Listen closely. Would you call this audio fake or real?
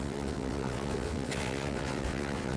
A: fake